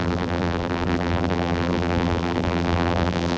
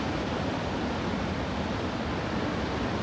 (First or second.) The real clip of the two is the second